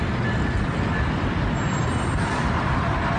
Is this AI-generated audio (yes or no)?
no